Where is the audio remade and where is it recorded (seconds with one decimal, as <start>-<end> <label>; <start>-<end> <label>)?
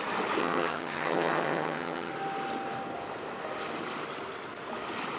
0.0-0.4 recorded; 0.4-2.1 remade; 2.1-5.2 recorded